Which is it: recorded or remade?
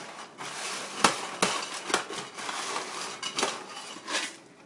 recorded